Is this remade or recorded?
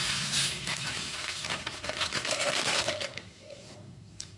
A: remade